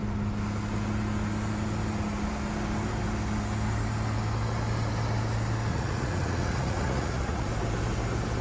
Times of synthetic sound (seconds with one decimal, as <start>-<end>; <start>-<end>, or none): 5.7-7.5

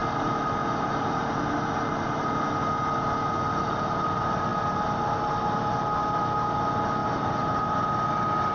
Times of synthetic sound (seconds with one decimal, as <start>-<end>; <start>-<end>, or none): 7.0-7.9

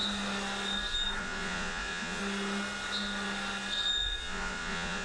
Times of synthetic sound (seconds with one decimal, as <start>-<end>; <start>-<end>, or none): 1.2-2.2; 4.2-5.0

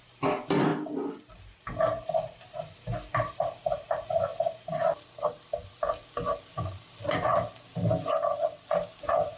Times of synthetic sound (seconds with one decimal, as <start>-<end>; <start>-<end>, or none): none

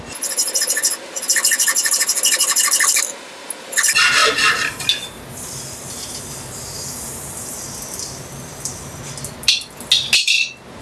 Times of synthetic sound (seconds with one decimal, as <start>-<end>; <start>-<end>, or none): none